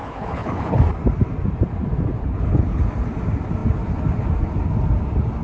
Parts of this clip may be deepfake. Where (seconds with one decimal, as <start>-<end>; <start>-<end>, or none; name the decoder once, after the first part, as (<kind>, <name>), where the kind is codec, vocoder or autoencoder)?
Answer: 0.0-0.8 (codec, HILCodec); 2.2-2.8